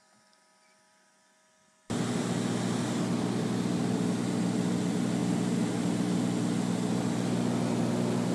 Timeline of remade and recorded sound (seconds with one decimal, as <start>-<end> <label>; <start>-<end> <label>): 0.0-8.3 recorded